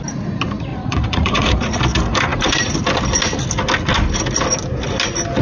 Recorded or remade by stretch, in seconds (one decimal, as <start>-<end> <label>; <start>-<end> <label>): 0.0-0.7 recorded; 0.7-1.8 remade; 1.8-5.4 recorded